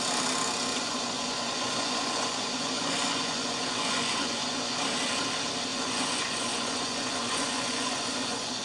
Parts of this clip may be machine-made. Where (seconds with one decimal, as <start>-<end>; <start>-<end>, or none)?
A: 0.7-4.8; 5.7-8.6